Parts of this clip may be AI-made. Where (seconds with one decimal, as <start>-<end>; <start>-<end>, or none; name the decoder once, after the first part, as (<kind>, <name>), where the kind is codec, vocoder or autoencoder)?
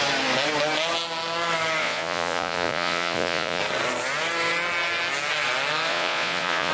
1.8-3.6 (vocoder, Vocos); 5.9-6.7